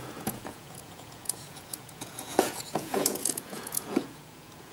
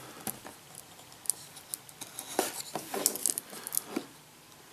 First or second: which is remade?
first